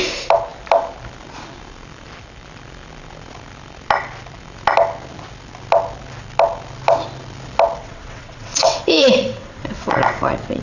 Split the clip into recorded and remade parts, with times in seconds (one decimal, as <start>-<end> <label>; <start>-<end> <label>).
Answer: 0.0-7.8 recorded; 7.8-10.6 remade